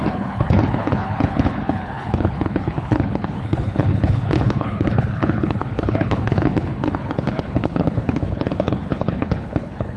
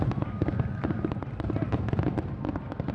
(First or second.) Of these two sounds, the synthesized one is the first